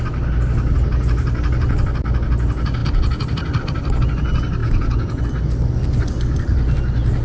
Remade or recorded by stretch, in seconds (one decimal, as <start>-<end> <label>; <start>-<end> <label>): 0.0-4.6 recorded; 4.6-5.2 remade; 5.2-7.2 recorded